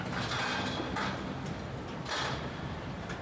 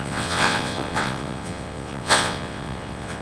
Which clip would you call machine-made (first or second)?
second